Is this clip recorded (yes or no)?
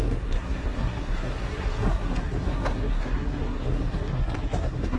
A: no